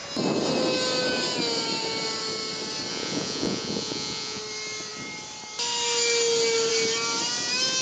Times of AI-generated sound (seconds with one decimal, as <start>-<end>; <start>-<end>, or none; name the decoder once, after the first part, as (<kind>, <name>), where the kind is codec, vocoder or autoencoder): 2.9-4.4 (vocoder, Vocos)